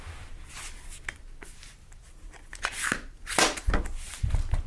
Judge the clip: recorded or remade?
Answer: recorded